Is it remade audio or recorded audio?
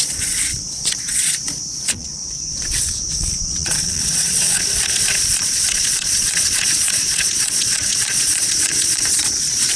remade